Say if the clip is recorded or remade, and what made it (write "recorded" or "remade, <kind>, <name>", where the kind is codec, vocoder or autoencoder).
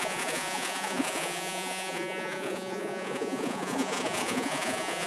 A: remade, vocoder, Vocos